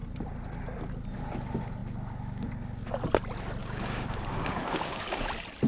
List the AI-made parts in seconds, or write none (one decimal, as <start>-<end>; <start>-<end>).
3.6-5.3